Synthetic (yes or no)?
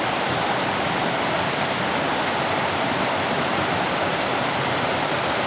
no